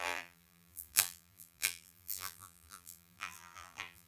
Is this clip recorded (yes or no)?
no